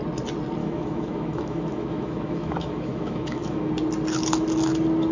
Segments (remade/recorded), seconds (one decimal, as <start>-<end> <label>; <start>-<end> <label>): 0.0-0.6 recorded; 0.6-3.7 remade; 3.7-5.1 recorded

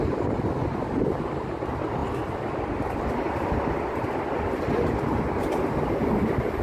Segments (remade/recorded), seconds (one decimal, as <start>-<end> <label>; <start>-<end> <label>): 0.0-6.6 recorded

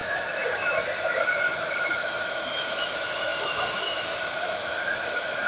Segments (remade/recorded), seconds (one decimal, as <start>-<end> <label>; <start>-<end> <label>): 0.0-5.5 remade

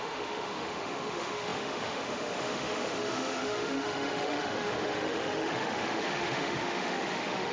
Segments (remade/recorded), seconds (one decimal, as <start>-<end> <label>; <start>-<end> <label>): 0.0-7.5 remade